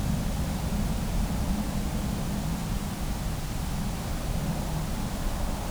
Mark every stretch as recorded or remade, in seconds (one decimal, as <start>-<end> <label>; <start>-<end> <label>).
0.0-1.1 remade; 1.1-2.6 recorded; 2.6-3.6 remade; 3.6-5.7 recorded